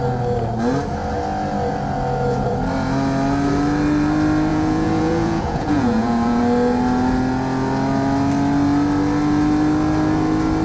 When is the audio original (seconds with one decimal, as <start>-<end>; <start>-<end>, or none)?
0.0-4.5; 6.4-10.6